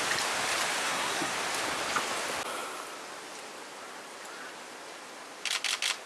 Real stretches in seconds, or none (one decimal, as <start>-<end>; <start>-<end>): 0.0-0.8; 1.3-6.1